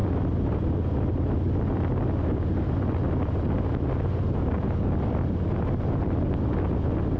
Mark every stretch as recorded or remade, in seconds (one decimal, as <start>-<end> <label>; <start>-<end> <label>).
0.0-7.2 recorded